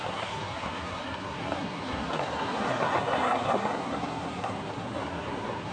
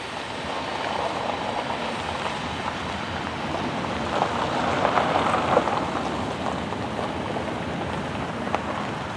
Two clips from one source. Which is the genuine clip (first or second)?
second